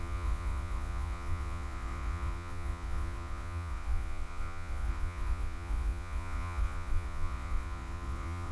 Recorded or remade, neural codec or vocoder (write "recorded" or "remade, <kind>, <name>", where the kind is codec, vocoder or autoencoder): remade, vocoder, Vocos